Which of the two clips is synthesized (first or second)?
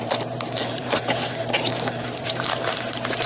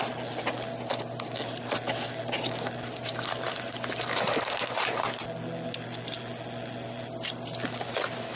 first